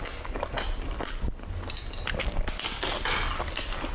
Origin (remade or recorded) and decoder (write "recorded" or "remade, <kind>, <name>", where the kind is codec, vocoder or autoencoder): recorded